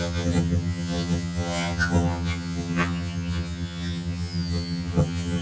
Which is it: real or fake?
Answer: fake